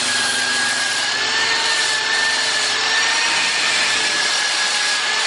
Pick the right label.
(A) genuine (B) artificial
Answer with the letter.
B